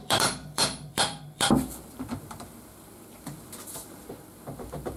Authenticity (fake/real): fake